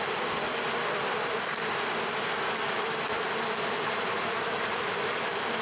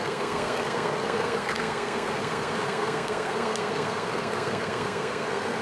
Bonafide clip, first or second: first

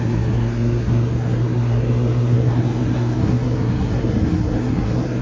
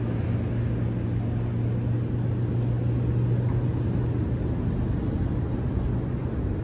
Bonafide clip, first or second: second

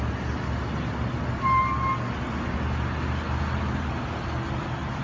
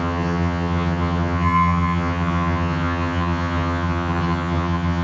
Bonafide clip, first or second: first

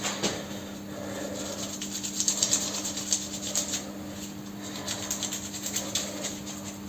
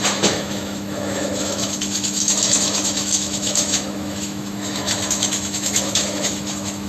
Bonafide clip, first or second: first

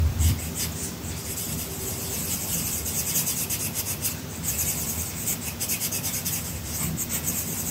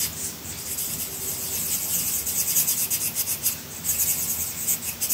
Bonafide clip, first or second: second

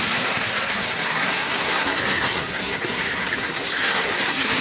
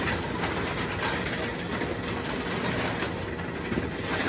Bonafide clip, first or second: second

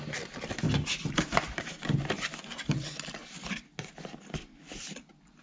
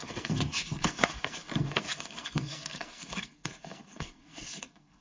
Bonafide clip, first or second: first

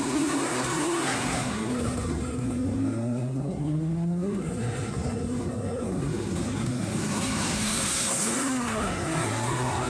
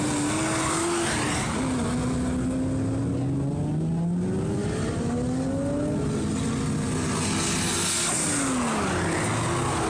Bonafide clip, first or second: second